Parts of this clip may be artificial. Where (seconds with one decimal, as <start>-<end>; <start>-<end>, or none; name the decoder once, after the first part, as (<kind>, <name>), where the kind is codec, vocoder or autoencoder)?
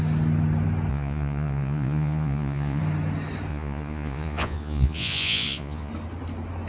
0.9-2.8 (vocoder, Vocos); 3.5-5.9